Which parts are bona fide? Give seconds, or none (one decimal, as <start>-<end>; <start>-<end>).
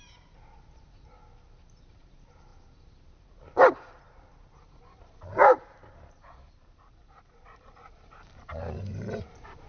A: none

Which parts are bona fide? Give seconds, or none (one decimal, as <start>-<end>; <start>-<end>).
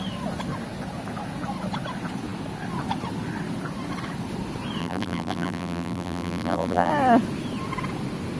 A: 0.0-4.8; 6.9-8.4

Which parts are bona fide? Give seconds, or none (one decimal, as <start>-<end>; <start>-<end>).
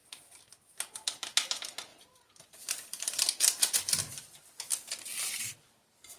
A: 0.0-1.9; 5.6-6.2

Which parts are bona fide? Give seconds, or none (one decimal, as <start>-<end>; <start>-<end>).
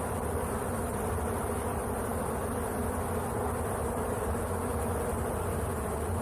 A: 1.8-3.6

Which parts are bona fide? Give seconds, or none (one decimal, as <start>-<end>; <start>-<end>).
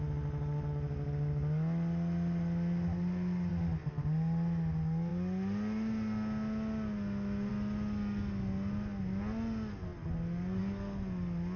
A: 0.0-11.6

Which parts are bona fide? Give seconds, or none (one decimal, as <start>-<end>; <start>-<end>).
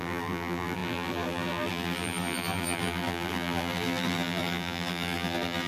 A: none